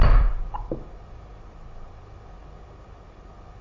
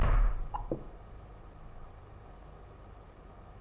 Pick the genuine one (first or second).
second